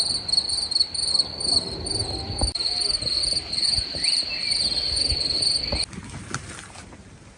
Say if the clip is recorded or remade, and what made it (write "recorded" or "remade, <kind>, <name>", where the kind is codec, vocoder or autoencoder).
recorded